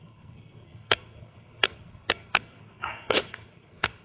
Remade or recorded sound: remade